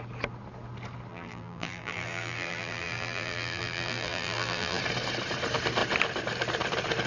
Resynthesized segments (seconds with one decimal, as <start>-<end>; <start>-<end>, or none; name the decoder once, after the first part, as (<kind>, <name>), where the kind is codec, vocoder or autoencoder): 1.1-4.8 (vocoder, BigVGAN v2)